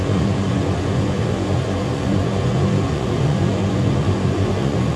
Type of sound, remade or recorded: remade